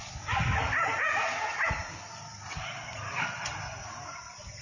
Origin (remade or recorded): recorded